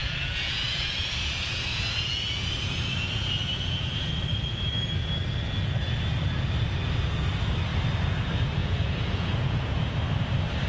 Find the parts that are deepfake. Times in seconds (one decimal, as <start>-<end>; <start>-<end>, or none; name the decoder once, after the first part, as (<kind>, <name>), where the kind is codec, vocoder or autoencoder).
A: 0.0-4.1 (vocoder, Vocos); 8.6-9.8